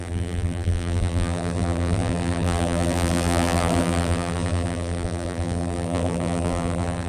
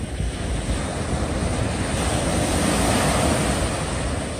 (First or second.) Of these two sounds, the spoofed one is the first